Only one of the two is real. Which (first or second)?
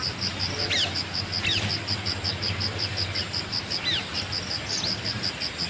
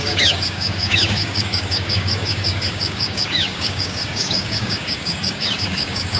first